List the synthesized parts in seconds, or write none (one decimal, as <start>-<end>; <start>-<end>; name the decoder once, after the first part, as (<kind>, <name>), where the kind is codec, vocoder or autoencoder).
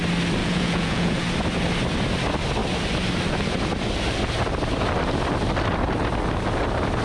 0.4-1.3 (vocoder, Vocos)